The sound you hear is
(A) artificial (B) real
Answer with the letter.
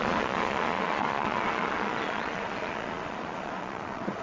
A